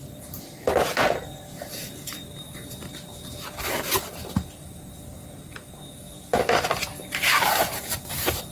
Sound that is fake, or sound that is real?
fake